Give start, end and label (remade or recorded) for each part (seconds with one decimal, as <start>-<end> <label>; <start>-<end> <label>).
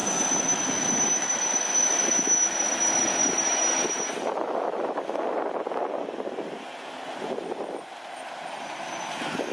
0.0-9.5 recorded